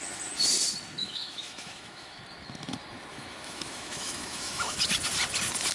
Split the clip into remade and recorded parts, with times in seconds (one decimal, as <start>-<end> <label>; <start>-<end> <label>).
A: 0.0-1.0 recorded; 1.0-2.2 remade; 2.2-3.1 recorded; 3.1-4.9 remade; 4.9-5.7 recorded